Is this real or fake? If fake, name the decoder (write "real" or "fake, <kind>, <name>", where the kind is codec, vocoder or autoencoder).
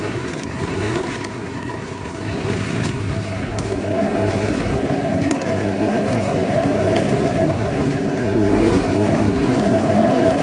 fake, codec, SNAC